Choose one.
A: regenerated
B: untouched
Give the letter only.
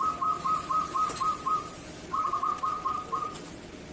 B